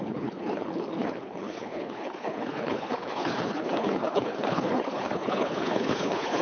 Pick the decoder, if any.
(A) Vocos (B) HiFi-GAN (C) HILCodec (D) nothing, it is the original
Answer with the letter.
C